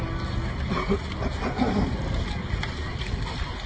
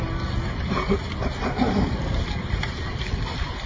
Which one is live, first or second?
first